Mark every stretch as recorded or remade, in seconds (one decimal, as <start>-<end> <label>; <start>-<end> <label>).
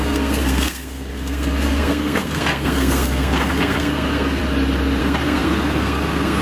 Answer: 0.0-4.4 remade; 4.4-5.0 recorded; 5.0-6.4 remade